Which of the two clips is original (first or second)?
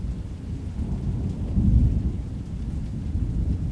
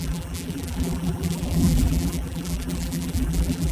first